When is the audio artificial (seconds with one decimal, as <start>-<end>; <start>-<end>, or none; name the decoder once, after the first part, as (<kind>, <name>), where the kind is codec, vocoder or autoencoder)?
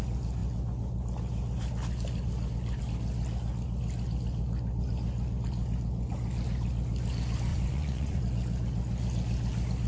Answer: 7.5-8.2 (vocoder, Vocos)